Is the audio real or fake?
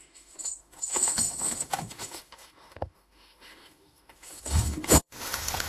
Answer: fake